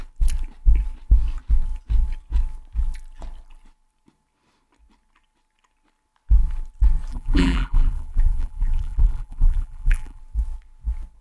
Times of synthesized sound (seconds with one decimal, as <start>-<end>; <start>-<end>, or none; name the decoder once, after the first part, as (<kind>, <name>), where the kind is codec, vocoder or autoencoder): 7.1-10.2 (vocoder, BigVGAN v2)